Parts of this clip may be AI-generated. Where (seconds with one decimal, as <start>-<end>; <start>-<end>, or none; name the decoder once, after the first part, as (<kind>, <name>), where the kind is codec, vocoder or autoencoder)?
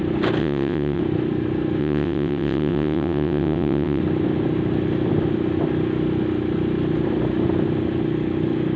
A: 0.4-1.0 (vocoder, WaveNeXt); 1.8-4.0